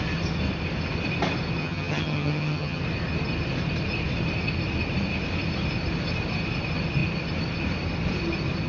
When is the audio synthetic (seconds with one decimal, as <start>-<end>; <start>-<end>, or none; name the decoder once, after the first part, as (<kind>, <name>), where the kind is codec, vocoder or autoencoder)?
1.6-2.8 (vocoder, HiFi-GAN)